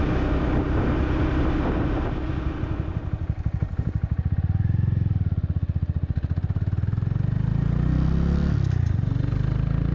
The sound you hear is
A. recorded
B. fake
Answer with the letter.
A